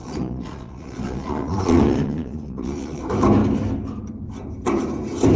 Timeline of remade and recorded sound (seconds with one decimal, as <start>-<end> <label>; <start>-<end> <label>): 0.0-3.0 remade; 3.0-5.4 recorded